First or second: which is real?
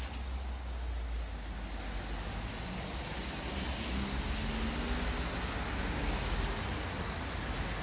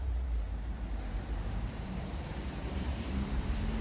first